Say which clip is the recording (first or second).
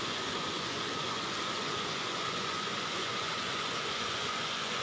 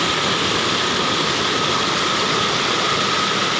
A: second